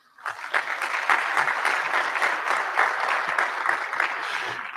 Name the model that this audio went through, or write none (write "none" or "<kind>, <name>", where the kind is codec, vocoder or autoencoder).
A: none